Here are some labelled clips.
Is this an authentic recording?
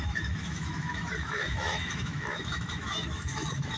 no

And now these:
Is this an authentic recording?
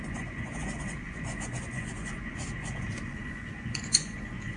no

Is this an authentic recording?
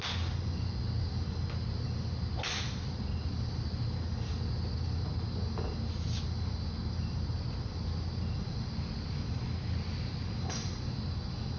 yes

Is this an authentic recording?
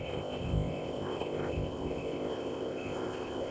no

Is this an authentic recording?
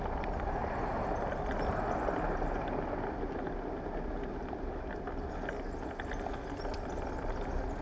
yes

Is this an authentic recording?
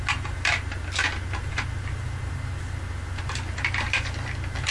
yes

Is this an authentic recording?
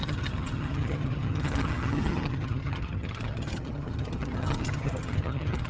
no